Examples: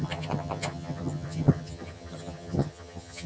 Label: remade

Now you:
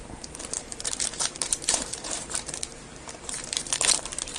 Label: remade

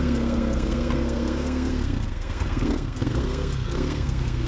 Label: remade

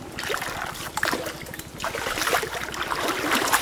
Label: remade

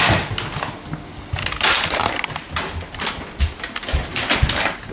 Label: recorded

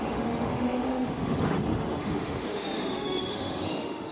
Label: remade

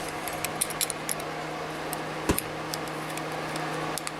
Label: recorded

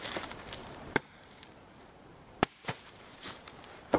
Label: remade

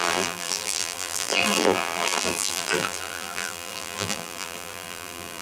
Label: remade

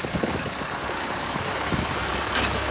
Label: remade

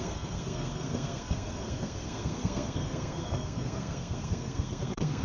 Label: remade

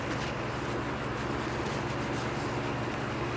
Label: recorded